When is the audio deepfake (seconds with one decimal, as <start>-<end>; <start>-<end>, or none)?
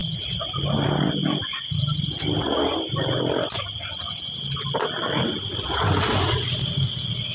none